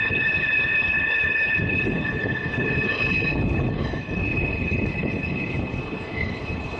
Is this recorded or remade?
remade